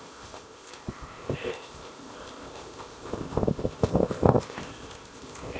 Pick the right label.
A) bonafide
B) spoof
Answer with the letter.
B